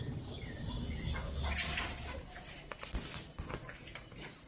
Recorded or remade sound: recorded